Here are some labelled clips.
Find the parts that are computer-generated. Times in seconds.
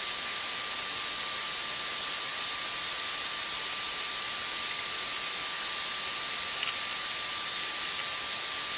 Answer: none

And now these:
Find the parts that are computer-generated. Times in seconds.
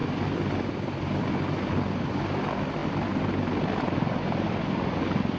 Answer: none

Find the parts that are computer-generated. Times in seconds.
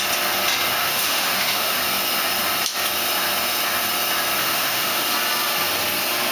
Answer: 0.8-1.8 (autoencoder, DAC-VAE); 4.4-5.0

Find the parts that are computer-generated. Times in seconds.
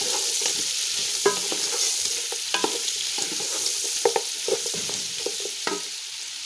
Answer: 2.5-5.9 (vocoder, BigVGAN v2)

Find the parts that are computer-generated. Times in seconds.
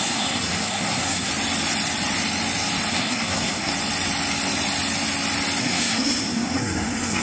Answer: 0.0-1.3 (codec, SNAC); 2.9-3.7; 5.6-7.2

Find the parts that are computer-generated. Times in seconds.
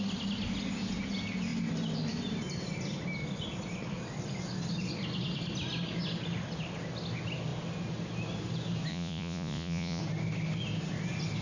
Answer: 8.9-10.0 (vocoder, Vocos)